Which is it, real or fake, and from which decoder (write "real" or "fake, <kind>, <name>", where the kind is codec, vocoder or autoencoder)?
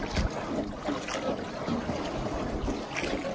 real